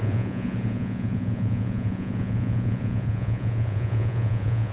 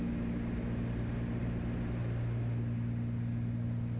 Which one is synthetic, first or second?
first